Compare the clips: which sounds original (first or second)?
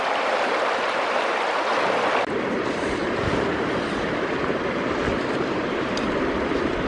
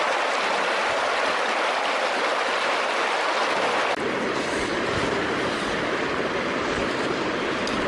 second